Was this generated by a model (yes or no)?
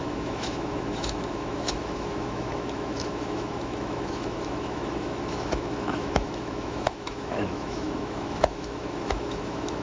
yes